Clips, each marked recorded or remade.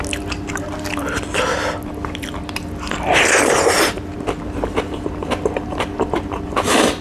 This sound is recorded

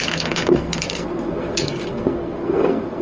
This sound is remade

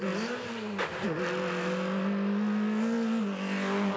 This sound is recorded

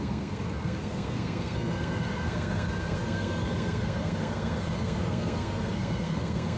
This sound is remade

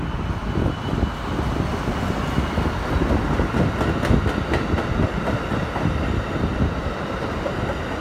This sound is recorded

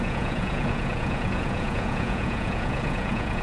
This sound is remade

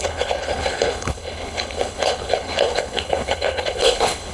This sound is remade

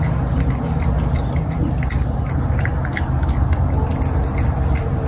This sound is recorded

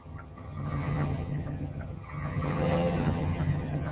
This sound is remade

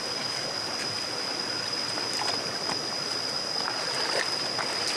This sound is recorded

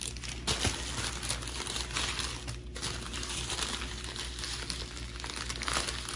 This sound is recorded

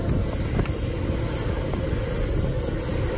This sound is recorded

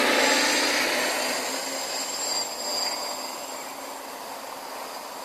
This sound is recorded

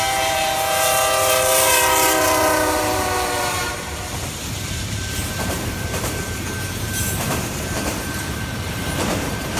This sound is remade